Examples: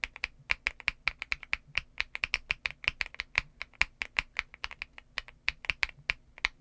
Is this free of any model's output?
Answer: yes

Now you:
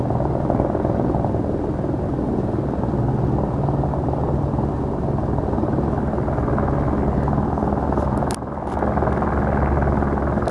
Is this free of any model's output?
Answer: yes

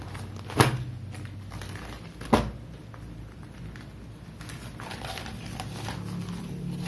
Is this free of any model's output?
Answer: yes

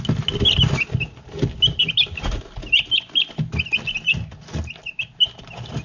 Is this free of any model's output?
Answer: yes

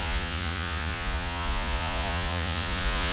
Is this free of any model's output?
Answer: no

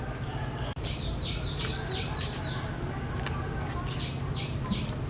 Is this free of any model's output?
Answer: yes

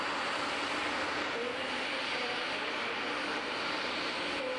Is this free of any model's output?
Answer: yes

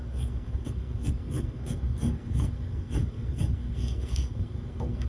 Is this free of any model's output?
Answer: no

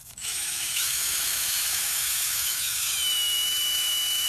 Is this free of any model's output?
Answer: no